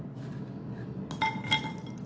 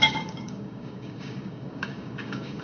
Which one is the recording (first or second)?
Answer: first